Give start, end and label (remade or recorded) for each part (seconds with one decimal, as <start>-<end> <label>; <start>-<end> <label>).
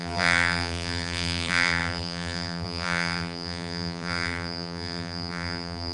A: 0.0-5.9 remade